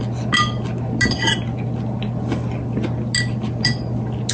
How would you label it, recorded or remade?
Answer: recorded